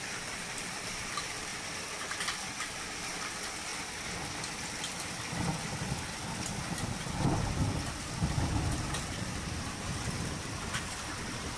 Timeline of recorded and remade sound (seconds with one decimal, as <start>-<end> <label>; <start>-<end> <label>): 0.0-1.5 remade; 1.5-2.6 recorded; 2.6-3.7 remade; 3.7-8.4 recorded; 8.4-11.6 remade